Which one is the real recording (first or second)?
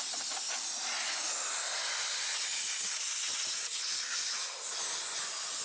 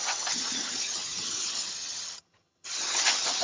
first